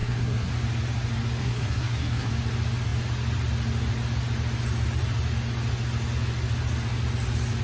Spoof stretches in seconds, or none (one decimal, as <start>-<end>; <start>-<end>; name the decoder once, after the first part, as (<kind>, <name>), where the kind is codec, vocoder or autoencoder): 0.0-0.5 (codec, SNAC); 1.4-2.3